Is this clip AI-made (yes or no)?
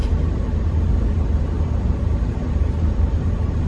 no